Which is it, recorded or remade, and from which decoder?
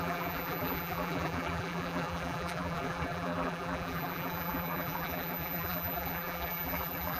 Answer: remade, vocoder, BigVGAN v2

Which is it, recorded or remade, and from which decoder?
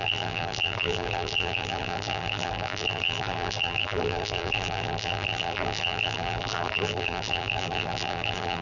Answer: remade, vocoder, BigVGAN v2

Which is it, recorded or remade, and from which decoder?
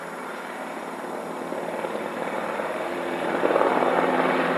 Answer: remade, vocoder, BigVGAN v2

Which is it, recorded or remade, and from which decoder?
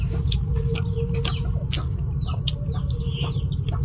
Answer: recorded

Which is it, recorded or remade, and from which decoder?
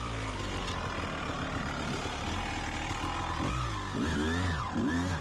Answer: recorded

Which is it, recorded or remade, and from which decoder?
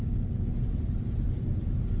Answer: remade, vocoder, BigVGAN v2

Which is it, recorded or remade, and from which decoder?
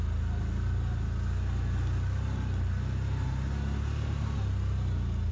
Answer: recorded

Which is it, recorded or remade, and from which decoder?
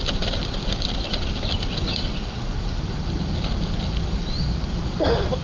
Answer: remade, vocoder, BigVGAN v2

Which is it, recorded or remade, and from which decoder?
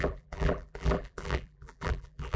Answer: remade, vocoder, BigVGAN v2